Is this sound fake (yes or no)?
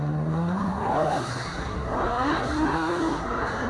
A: yes